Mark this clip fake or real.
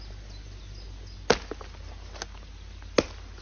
real